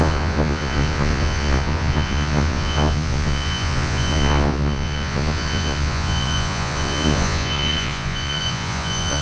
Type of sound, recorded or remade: remade